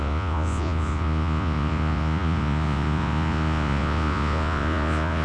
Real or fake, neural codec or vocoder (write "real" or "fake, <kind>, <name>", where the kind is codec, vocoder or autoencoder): fake, vocoder, Vocos